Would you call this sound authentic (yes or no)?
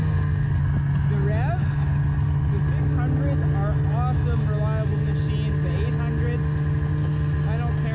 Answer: yes